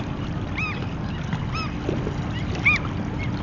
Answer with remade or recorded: recorded